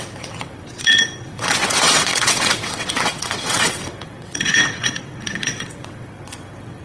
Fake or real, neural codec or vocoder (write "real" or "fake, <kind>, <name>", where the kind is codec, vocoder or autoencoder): fake, vocoder, WaveNeXt